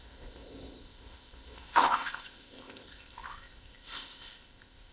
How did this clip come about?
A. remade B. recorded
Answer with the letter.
A